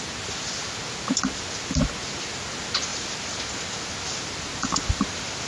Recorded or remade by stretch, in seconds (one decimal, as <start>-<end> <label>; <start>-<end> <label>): 0.0-5.5 recorded